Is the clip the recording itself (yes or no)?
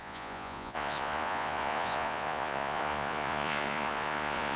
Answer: no